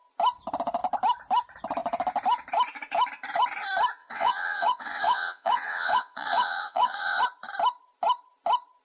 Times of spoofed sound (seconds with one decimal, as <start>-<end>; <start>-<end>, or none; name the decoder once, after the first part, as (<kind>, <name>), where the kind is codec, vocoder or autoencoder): 4.0-7.2 (vocoder, WaveNeXt)